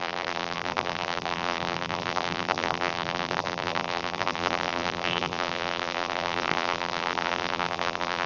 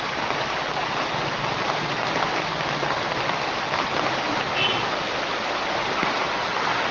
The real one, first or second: second